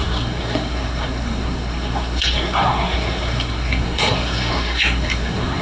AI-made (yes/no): yes